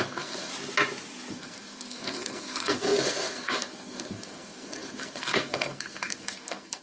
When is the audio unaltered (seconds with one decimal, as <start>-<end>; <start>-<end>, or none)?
0.5-1.3